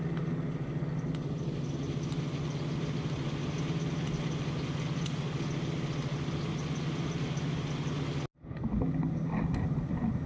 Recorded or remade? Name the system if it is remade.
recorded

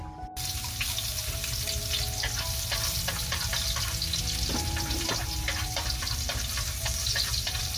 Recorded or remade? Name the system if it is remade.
recorded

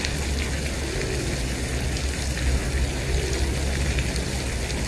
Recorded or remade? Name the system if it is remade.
recorded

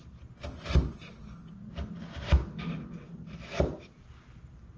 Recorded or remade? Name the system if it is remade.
recorded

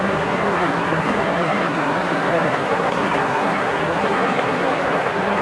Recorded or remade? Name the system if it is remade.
remade, codec, SNAC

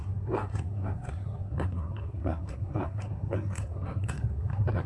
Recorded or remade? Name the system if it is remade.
remade, codec, SNAC